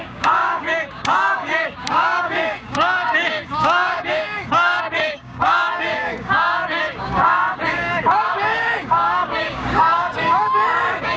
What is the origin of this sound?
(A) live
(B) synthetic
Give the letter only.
B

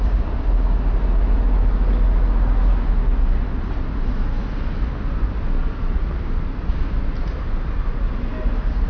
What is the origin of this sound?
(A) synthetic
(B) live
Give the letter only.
B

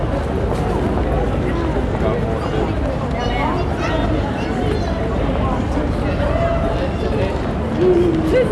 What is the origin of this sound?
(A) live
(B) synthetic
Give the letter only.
A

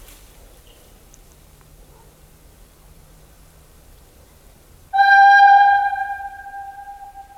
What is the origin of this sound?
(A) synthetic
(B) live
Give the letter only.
A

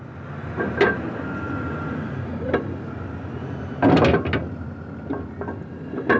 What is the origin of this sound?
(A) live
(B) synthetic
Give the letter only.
A